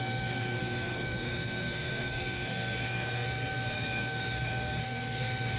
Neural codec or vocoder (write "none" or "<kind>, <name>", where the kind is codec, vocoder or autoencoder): codec, SNAC